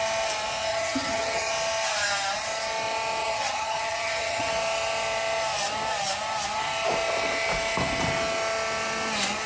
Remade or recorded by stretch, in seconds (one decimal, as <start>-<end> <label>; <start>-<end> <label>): 0.0-0.7 recorded; 0.7-1.5 remade; 1.5-3.2 recorded; 3.2-4.5 remade; 4.5-9.5 recorded